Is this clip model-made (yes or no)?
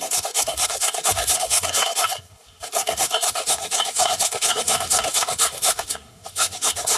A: yes